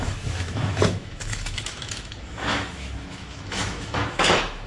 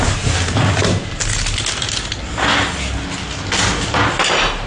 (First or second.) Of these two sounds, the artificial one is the first